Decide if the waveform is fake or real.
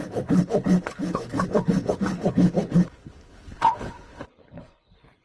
fake